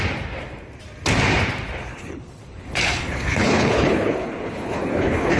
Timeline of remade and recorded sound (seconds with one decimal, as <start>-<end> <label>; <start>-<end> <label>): 0.0-1.9 recorded; 1.9-5.4 remade